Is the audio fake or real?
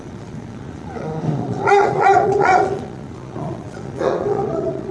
fake